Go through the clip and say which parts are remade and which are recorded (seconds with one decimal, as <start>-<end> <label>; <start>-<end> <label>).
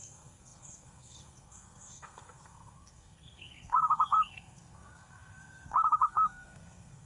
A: 0.0-7.0 remade